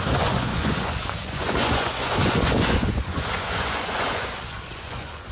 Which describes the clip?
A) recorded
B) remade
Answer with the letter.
B